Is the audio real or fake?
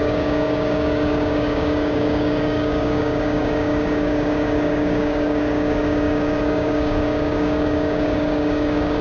fake